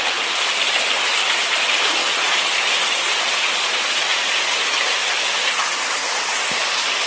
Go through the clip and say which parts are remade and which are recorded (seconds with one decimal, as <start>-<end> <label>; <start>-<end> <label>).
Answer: 0.0-2.0 recorded; 2.0-2.6 remade; 2.6-3.7 recorded; 3.7-4.3 remade; 4.3-7.1 recorded